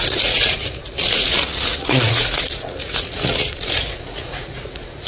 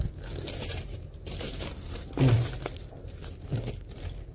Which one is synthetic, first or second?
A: first